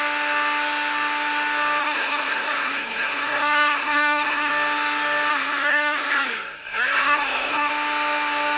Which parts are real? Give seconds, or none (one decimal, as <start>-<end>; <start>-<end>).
0.0-1.8; 4.5-5.3; 7.7-8.6